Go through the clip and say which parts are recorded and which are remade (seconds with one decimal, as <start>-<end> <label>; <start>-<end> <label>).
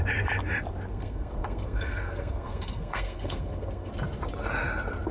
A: 0.0-0.9 recorded; 0.9-3.9 remade; 3.9-5.1 recorded